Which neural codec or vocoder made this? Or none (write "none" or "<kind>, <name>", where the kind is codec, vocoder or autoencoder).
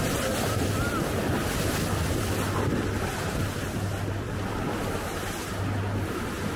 none